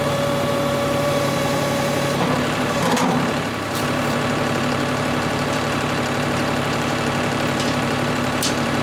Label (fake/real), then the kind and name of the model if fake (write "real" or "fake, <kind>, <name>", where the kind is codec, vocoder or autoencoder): fake, vocoder, BigVGAN v2